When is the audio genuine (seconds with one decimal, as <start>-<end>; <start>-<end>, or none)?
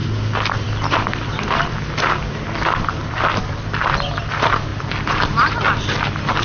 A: 1.7-2.2; 3.2-4.7; 5.6-6.4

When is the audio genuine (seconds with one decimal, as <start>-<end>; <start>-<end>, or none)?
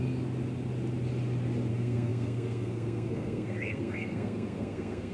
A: 0.0-1.7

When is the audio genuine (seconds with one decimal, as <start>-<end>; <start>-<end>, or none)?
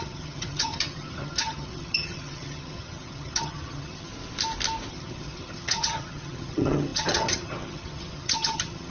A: 4.1-4.9